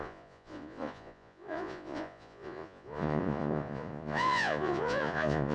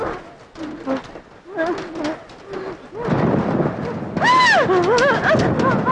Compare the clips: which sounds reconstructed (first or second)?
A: first